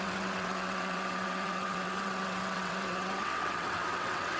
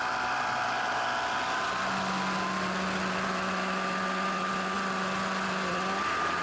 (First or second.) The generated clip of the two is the first